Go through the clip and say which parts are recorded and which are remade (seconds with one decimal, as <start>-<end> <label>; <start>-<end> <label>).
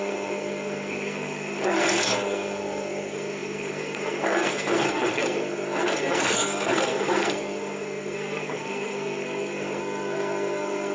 0.0-10.9 remade